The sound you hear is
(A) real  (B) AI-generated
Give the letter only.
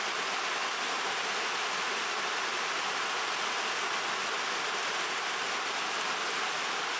A